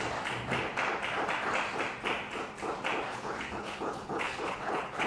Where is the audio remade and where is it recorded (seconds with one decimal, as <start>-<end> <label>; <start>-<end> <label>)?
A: 0.0-3.1 recorded; 3.1-5.1 remade